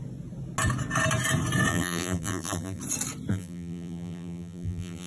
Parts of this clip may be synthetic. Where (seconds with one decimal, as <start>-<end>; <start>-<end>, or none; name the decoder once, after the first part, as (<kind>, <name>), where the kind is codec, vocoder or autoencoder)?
1.7-2.8 (vocoder, BigVGAN v2); 3.3-5.1